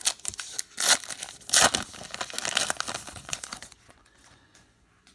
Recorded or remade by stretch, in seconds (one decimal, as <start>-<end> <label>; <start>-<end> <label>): 0.0-3.1 recorded; 3.1-5.1 remade